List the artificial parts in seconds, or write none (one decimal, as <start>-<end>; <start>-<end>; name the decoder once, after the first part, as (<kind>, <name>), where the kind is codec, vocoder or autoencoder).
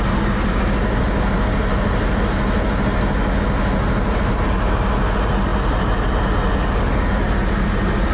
none